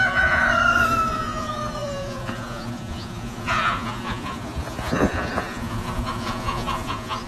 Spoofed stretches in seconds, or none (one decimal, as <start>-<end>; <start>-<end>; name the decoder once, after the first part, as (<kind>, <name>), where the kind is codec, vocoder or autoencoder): 0.0-0.4 (vocoder, Vocos); 1.0-7.3